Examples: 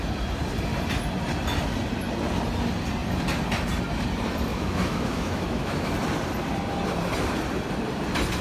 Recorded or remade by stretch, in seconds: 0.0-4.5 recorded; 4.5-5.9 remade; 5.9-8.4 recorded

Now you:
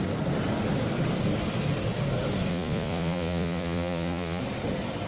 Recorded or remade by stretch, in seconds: 0.0-2.5 recorded; 2.5-4.4 remade; 4.4-5.1 recorded

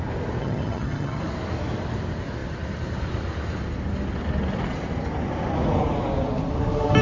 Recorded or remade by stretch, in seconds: 0.0-0.4 recorded; 0.4-1.2 remade; 1.2-7.0 recorded